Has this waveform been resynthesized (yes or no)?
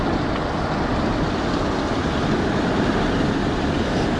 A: yes